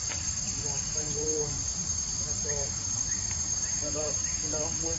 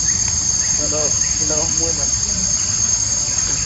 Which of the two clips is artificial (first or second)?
first